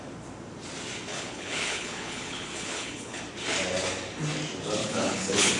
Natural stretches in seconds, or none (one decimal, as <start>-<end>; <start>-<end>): 0.0-1.1; 3.2-4.8